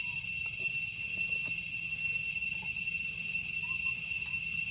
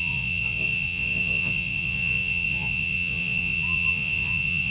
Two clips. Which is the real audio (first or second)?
first